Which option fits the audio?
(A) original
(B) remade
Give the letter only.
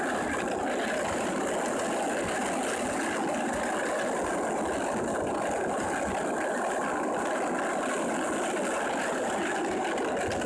A